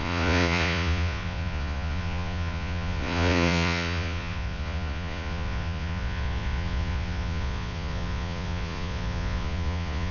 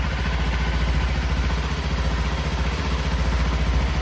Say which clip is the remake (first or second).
first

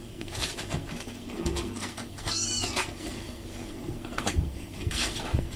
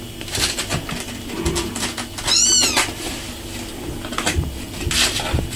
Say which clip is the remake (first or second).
first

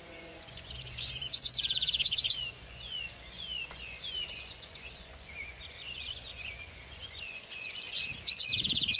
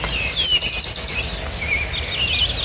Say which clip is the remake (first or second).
first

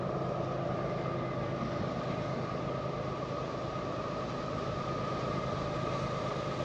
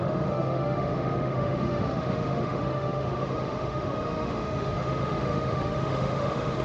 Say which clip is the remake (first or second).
second